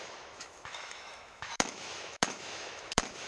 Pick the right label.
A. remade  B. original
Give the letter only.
A